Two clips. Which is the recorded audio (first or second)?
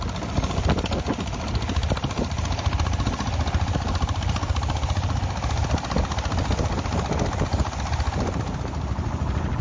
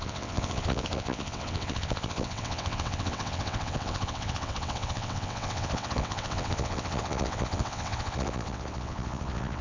first